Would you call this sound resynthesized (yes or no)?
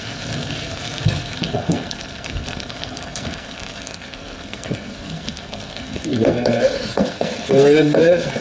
yes